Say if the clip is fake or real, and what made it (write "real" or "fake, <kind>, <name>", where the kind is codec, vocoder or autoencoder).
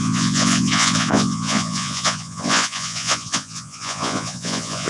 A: fake, vocoder, Vocos